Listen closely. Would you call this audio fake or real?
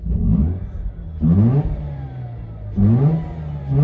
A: real